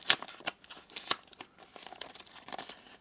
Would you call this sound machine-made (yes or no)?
no